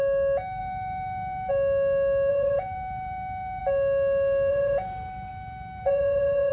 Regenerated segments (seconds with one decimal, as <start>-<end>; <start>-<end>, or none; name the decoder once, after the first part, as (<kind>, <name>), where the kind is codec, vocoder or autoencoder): 0.6-1.5 (vocoder, Vocos); 2.3-3.6; 4.5-5.3; 5.8-6.5